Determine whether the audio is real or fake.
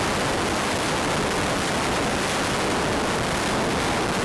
real